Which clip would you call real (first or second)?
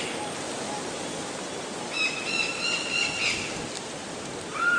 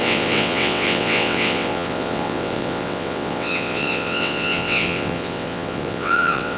first